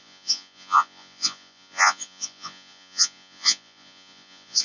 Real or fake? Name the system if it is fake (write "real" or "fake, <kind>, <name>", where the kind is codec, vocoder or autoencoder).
fake, vocoder, Vocos